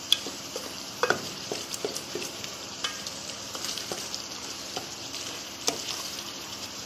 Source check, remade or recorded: remade